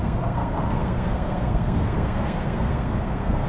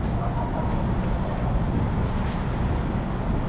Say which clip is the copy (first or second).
first